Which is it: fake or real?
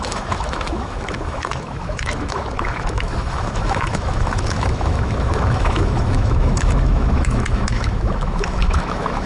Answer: fake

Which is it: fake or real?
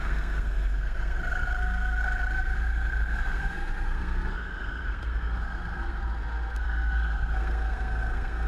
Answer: fake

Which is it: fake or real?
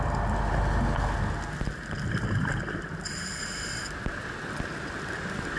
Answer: real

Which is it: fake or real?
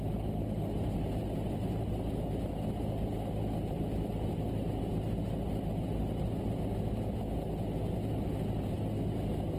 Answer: real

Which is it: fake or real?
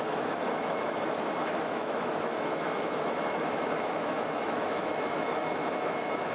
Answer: fake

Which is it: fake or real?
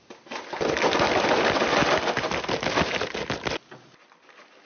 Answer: real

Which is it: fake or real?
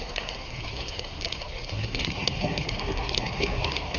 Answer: fake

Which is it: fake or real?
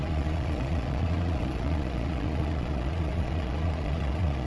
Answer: fake